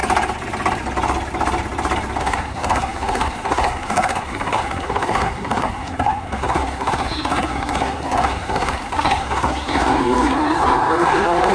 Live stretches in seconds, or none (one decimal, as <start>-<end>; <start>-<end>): 0.0-2.2